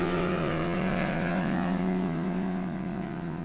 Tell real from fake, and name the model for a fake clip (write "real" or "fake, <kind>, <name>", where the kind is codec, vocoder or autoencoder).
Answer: fake, vocoder, WaveNeXt